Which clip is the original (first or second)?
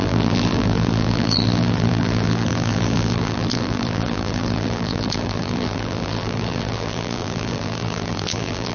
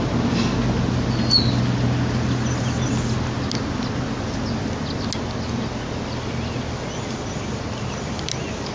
second